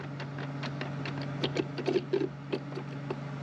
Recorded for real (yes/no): yes